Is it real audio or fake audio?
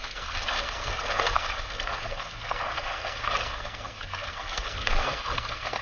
fake